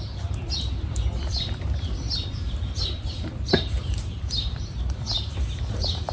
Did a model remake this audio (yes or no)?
yes